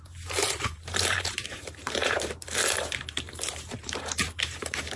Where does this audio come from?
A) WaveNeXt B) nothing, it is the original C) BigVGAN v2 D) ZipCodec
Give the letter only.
C